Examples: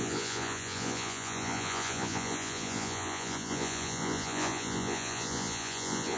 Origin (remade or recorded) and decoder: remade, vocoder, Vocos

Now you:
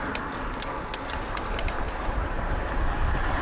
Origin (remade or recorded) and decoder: recorded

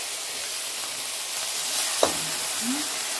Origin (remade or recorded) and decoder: recorded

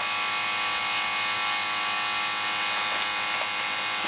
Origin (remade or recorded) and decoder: recorded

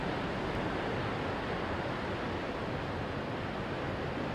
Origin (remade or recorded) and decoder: recorded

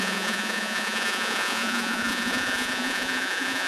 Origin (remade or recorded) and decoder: remade, vocoder, Vocos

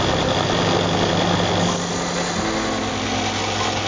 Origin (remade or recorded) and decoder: recorded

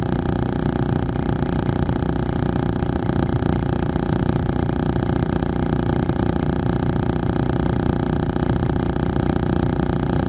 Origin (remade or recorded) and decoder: remade, vocoder, Vocos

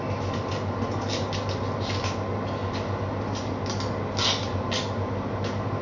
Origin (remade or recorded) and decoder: recorded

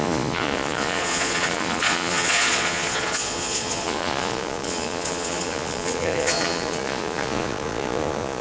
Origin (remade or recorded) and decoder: remade, vocoder, Vocos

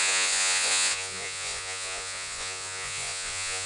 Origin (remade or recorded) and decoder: remade, vocoder, Vocos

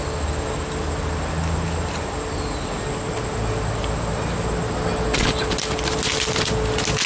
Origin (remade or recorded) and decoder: recorded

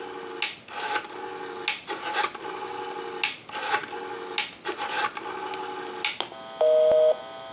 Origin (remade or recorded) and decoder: recorded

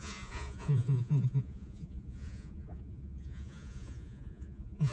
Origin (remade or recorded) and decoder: remade, vocoder, Vocos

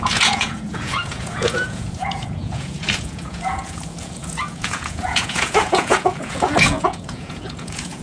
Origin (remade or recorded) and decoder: remade, vocoder, Vocos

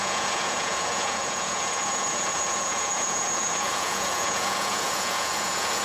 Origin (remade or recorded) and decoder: remade, vocoder, Vocos